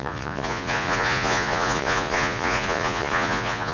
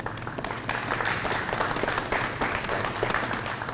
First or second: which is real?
second